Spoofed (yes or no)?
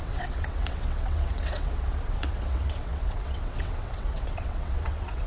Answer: yes